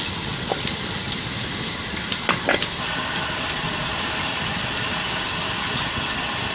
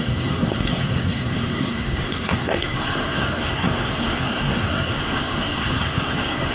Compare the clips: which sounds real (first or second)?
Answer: first